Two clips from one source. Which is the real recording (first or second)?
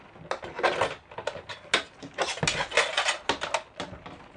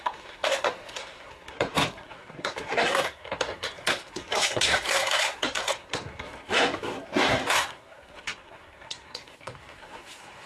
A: first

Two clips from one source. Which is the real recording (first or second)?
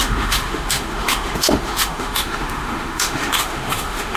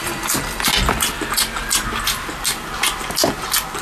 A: second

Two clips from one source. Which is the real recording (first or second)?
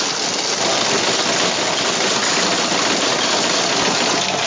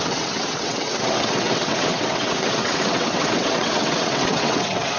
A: first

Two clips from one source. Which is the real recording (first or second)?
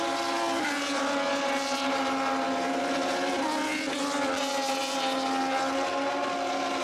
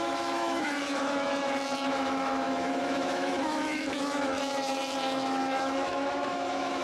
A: first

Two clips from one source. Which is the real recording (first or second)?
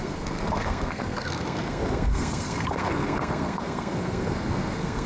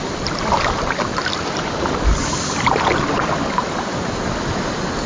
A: second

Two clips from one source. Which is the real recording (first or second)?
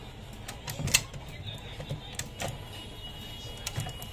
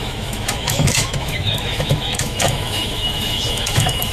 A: first